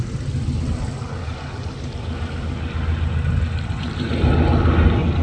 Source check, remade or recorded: recorded